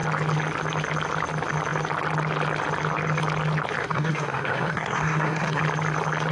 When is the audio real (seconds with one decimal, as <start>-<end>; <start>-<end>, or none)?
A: 0.0-3.8; 5.6-6.3